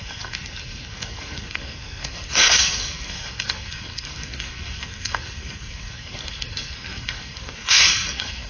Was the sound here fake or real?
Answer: fake